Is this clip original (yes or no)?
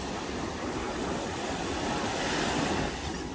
yes